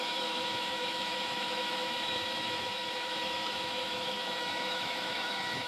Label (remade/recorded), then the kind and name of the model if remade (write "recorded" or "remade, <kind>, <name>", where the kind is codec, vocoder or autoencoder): remade, autoencoder, DAC-VAE